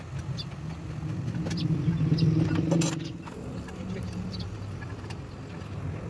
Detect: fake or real real